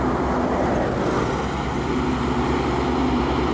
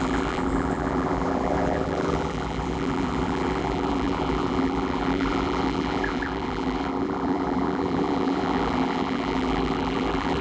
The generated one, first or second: second